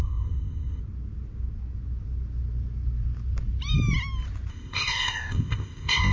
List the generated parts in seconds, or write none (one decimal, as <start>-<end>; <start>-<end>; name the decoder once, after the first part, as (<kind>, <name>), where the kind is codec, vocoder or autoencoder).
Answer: 0.0-0.8 (codec, ZipCodec); 4.5-6.1